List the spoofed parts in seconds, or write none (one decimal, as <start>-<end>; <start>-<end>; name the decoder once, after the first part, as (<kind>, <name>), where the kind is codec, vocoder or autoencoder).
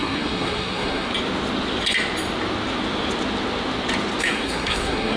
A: 0.0-1.1 (codec, SNAC); 4.2-5.2